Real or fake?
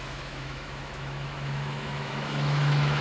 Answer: fake